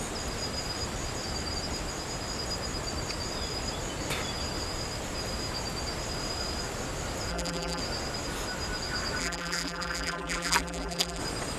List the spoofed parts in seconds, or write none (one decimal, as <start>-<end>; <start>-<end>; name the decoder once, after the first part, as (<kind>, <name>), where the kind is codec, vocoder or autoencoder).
7.3-7.8 (vocoder, BigVGAN v2); 9.2-11.2